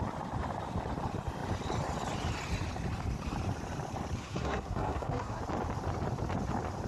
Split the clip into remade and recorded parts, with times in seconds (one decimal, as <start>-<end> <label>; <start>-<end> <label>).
0.0-4.2 recorded; 4.2-5.4 remade; 5.4-6.9 recorded